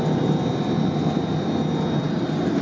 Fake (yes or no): no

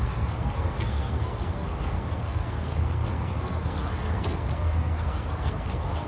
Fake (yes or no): yes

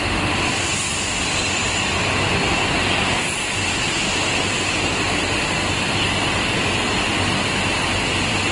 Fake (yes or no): no